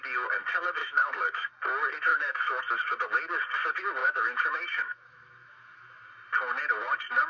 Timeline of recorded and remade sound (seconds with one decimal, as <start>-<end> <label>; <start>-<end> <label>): 0.0-0.8 recorded; 0.8-1.5 remade; 1.5-2.1 recorded; 2.1-2.6 remade; 2.6-4.0 recorded; 4.0-6.1 remade; 6.1-7.3 recorded

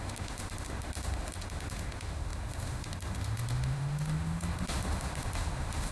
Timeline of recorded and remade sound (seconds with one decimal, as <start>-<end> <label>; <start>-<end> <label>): 0.0-5.9 remade